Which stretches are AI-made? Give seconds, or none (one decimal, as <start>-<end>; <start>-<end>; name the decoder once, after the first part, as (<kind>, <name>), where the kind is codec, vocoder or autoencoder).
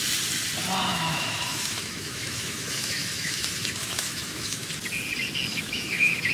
0.9-4.7 (autoencoder, DAC-VAE); 5.5-6.3